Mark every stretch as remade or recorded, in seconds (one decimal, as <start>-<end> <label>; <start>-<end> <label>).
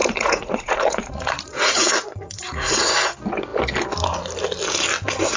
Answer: 0.0-2.8 remade; 2.8-5.4 recorded